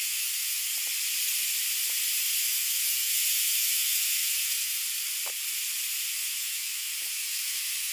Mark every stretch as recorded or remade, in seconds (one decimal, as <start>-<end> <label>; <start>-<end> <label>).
0.0-0.7 remade; 0.7-2.4 recorded; 2.4-4.8 remade; 4.8-6.1 recorded; 6.1-7.9 remade